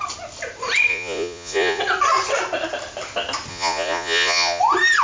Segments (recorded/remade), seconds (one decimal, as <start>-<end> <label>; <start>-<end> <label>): 0.0-0.9 recorded; 0.9-1.8 remade; 1.8-3.5 recorded; 3.5-4.6 remade; 4.6-5.0 recorded